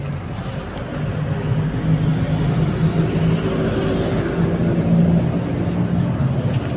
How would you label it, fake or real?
real